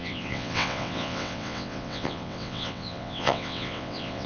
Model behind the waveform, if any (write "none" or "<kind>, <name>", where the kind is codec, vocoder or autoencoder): vocoder, WaveNeXt